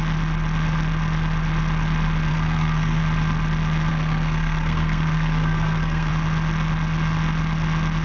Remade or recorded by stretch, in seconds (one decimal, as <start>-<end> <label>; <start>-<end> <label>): 0.0-2.3 recorded; 2.3-3.0 remade; 3.0-3.9 recorded; 3.9-6.1 remade; 6.1-8.0 recorded